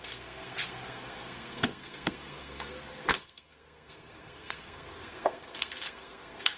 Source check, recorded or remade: remade